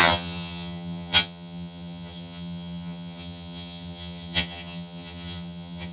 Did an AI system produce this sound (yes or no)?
yes